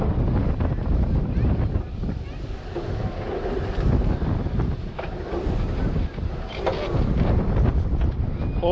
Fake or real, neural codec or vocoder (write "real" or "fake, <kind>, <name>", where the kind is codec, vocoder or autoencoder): real